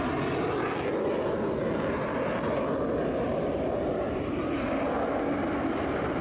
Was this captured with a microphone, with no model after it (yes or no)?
yes